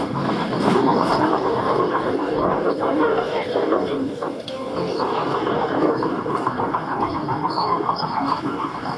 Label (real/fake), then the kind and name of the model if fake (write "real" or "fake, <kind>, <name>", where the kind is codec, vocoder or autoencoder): fake, codec, DAC